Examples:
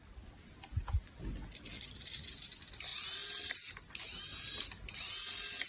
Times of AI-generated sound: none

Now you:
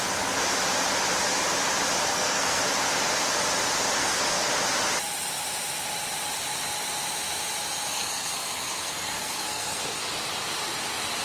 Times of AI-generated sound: 2.1-2.6; 4.0-4.5; 7.9-10.1

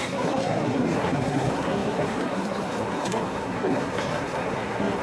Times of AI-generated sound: 0.0-5.0

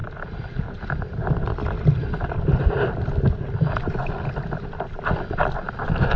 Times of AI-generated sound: none

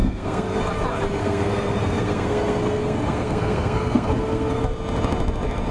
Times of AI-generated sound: 0.0-0.6; 1.2-4.6

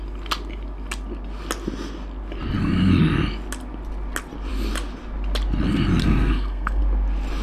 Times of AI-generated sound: 6.0-6.8